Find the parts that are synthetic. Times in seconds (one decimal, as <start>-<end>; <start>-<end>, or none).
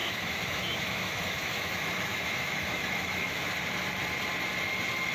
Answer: 0.0-3.4